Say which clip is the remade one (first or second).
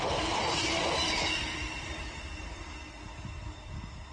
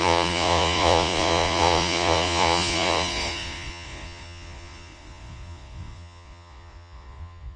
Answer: second